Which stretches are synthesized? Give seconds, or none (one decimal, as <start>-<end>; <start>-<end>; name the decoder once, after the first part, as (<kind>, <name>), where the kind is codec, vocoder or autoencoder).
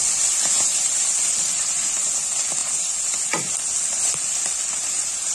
0.7-2.1 (vocoder, BigVGAN v2); 2.6-3.5; 4.7-5.3